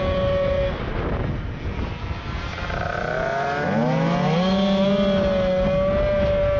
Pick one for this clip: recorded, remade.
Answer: recorded